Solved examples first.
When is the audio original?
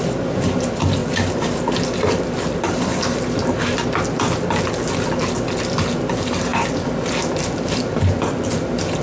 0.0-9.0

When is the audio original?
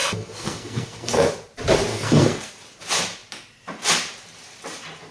1.3-1.9; 2.5-5.1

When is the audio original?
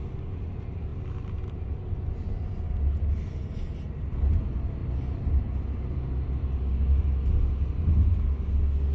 0.0-8.9